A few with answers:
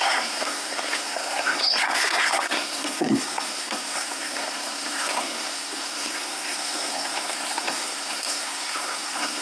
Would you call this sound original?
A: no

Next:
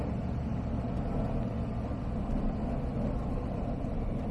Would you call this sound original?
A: yes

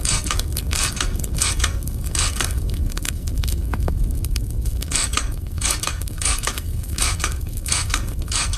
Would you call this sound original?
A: no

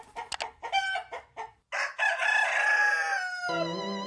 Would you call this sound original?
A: yes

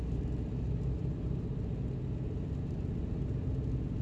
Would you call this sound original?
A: yes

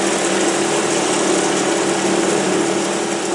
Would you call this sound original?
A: yes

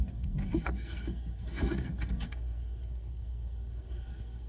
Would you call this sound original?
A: no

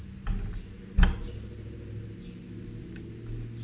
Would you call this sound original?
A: yes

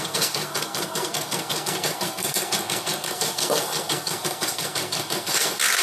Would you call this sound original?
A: no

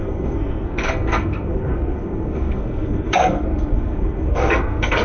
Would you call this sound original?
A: no